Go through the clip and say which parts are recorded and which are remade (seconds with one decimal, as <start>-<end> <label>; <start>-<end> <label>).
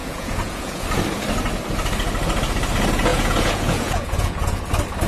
0.0-0.8 remade; 0.8-3.1 recorded; 3.1-4.6 remade; 4.6-5.1 recorded